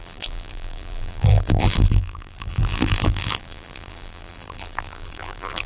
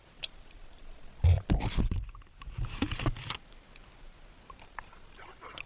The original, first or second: second